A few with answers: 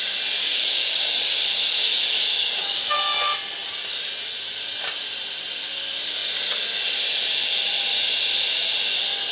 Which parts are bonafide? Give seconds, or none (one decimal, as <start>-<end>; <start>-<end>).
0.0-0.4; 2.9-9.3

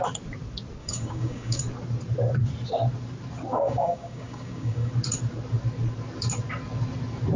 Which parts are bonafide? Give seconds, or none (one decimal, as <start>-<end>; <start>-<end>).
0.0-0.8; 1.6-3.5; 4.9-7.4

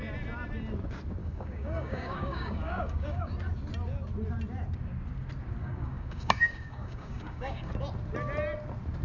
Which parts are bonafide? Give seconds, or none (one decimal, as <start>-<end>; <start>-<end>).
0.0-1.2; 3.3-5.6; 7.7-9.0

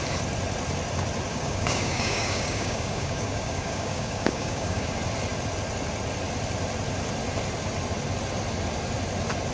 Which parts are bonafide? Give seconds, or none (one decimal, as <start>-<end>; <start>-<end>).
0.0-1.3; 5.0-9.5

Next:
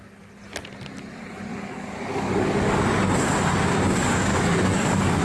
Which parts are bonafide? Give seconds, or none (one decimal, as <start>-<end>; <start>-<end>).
0.0-1.5; 2.8-4.3

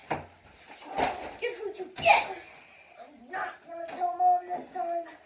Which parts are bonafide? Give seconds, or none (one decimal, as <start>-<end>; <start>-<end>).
0.0-5.3

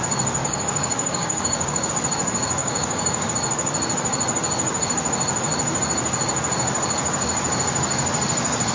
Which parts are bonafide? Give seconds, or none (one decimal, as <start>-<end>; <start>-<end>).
0.0-0.4; 1.9-2.6; 3.3-8.7

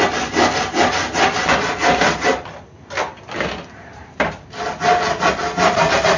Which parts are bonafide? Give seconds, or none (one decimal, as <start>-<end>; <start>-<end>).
0.0-6.2